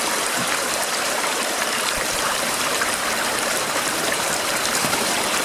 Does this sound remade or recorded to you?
remade